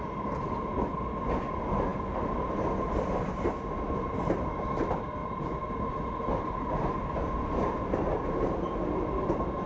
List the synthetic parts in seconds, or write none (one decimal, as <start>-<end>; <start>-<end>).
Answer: none